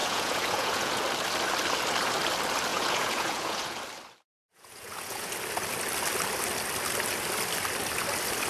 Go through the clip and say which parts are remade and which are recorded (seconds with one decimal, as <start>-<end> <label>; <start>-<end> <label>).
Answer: 0.0-1.0 remade; 1.0-2.7 recorded; 2.7-3.8 remade; 3.8-4.5 recorded; 4.5-5.3 remade; 5.3-8.5 recorded